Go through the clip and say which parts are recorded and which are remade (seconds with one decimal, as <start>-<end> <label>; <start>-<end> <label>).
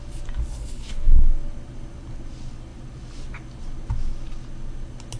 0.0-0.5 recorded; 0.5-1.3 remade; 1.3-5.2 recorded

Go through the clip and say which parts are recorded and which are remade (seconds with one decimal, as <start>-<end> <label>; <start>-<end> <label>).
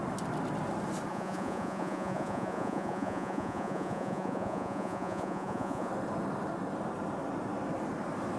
0.0-1.1 recorded; 1.1-5.9 remade; 5.9-8.4 recorded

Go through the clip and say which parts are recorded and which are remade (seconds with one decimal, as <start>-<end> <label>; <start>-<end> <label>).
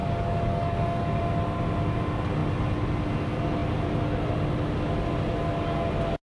0.0-1.2 remade; 1.2-6.2 recorded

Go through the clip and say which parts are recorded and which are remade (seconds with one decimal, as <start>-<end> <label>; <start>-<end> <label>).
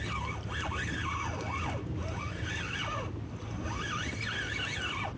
0.0-5.2 recorded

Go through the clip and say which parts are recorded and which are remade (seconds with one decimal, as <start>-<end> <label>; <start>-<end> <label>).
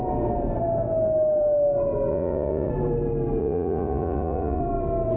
0.0-2.1 recorded; 2.1-2.7 remade; 2.7-3.4 recorded; 3.4-4.6 remade; 4.6-5.2 recorded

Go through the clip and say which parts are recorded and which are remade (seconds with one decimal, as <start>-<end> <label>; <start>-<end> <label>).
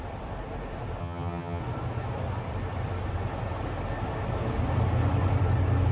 0.0-1.0 recorded; 1.0-1.6 remade; 1.6-5.9 recorded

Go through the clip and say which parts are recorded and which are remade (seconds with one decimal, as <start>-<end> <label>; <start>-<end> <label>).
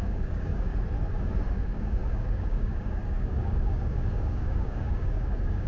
0.0-0.7 remade; 0.7-1.5 recorded; 1.5-5.7 remade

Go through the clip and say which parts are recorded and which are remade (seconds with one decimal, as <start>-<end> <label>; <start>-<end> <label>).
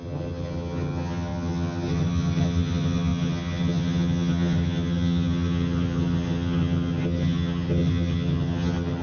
0.0-9.0 remade